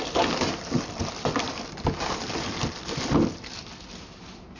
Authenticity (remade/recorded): remade